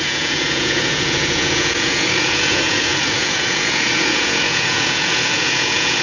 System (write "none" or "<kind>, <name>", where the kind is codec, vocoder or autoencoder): vocoder, Vocos